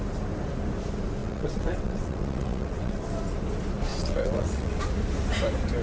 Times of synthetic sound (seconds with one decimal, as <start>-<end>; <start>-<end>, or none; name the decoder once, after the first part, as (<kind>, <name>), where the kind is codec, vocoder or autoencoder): 1.2-3.0 (vocoder, WaveNeXt); 3.9-4.8